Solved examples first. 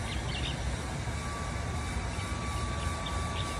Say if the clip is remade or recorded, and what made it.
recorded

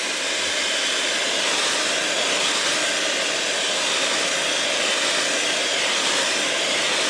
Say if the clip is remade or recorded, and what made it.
recorded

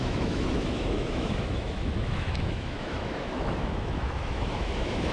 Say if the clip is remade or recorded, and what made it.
remade, autoencoder, DAC-VAE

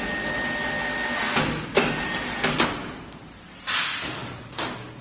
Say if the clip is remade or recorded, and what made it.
recorded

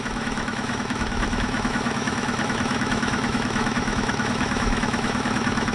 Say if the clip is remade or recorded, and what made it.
remade, autoencoder, DAC-VAE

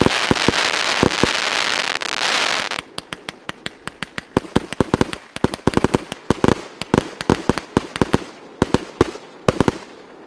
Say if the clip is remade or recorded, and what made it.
recorded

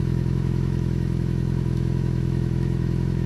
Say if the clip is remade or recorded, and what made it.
remade, autoencoder, DAC-VAE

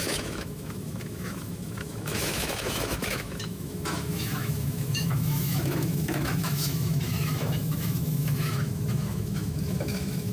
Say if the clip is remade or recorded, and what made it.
remade, autoencoder, DAC-VAE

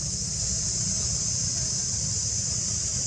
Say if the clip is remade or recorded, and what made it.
recorded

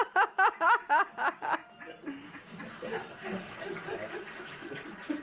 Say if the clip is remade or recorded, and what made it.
recorded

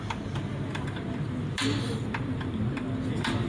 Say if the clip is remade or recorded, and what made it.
recorded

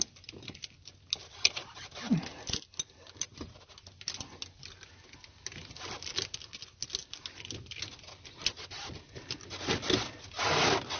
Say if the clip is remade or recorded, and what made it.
recorded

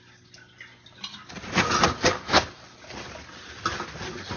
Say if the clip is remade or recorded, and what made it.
recorded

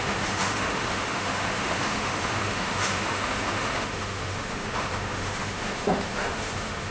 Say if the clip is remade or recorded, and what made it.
remade, autoencoder, DAC-VAE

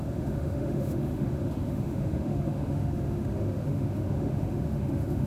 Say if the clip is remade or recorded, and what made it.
remade, autoencoder, DAC-VAE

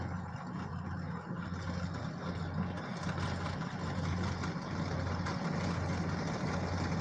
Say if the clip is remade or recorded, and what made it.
recorded